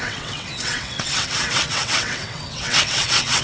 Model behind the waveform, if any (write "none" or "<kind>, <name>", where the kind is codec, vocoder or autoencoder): vocoder, WaveNeXt